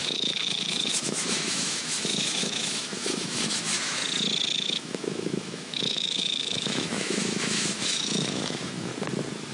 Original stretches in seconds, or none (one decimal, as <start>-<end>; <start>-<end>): 4.0-4.6; 8.9-9.5